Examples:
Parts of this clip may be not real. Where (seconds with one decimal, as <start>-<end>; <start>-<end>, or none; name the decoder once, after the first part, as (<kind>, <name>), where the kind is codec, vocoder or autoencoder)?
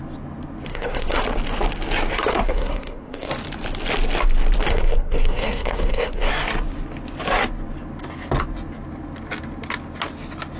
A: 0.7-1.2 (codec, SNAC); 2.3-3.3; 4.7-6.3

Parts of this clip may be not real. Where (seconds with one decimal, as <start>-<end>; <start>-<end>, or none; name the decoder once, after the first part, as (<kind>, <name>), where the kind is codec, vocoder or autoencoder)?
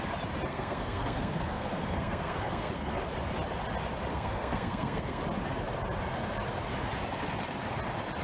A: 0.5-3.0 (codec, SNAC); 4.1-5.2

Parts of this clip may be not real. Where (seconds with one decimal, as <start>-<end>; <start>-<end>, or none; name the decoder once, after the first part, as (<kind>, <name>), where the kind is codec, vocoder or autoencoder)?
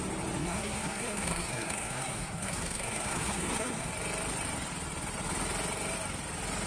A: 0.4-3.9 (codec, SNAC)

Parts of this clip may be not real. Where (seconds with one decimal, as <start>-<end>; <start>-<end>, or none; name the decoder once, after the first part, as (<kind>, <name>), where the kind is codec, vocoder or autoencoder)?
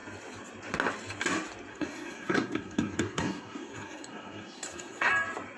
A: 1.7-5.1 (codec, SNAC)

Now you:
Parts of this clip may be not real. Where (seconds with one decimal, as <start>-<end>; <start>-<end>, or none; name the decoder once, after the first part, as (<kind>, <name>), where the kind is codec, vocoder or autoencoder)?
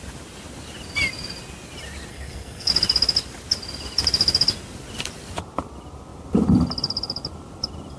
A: 2.1-2.7 (codec, SNAC)